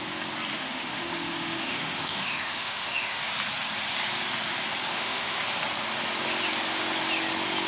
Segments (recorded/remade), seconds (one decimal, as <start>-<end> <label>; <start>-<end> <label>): 0.0-0.5 recorded; 0.5-3.2 remade; 3.2-4.9 recorded; 4.9-5.4 remade; 5.4-7.7 recorded